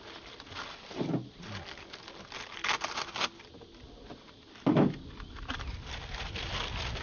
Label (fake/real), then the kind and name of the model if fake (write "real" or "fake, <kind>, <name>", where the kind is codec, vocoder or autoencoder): real